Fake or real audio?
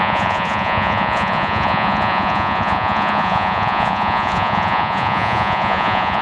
fake